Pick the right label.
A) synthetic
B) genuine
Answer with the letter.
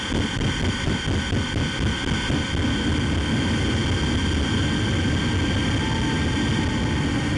B